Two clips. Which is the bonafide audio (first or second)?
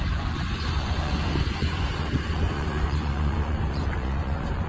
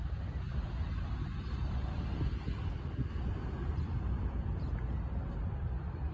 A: second